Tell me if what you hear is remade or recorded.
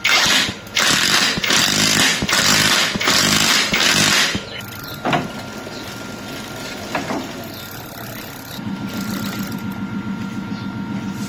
recorded